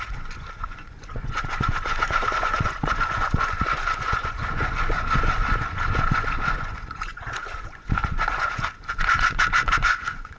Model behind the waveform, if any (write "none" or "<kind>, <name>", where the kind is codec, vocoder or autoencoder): vocoder, Vocos